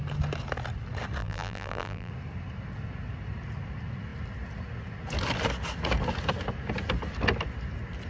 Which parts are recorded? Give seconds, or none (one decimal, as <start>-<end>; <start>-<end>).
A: 0.0-1.2; 2.1-8.1